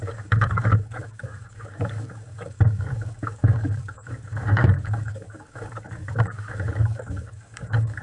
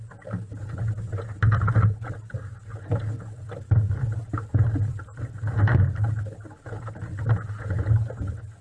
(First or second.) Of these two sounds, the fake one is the first